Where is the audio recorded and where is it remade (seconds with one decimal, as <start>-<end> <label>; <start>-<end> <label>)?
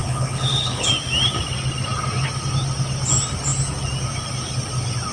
0.0-0.9 remade; 0.9-5.1 recorded